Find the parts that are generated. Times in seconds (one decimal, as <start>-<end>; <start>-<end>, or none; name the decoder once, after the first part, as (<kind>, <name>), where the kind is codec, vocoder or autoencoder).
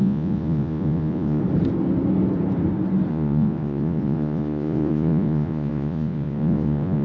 0.0-1.4 (vocoder, Vocos); 3.1-7.0